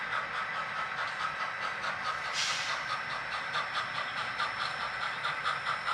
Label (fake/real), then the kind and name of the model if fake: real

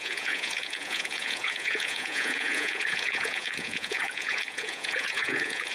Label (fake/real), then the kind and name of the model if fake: fake, vocoder, Vocos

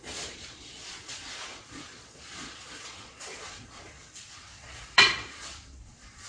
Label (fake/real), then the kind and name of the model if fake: fake, vocoder, Vocos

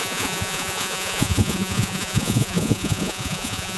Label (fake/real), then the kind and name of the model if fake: fake, vocoder, Vocos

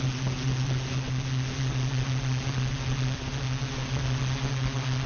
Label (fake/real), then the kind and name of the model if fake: real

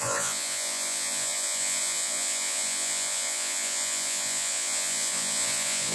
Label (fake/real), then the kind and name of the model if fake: fake, vocoder, Vocos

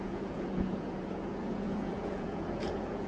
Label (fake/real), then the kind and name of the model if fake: fake, vocoder, Vocos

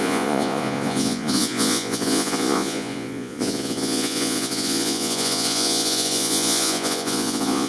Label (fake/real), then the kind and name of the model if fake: fake, vocoder, Vocos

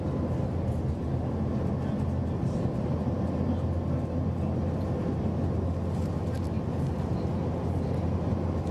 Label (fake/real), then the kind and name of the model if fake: real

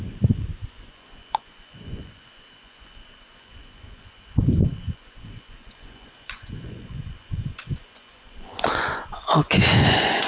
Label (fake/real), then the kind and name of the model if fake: fake, vocoder, Vocos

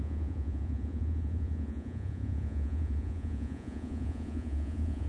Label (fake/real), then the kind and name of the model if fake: fake, vocoder, Vocos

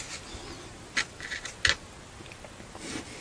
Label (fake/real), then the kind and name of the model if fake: real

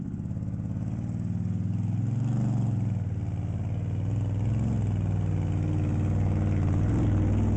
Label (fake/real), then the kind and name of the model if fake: real